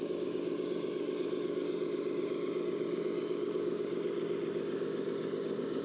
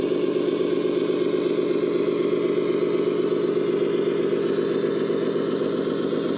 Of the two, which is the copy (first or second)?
first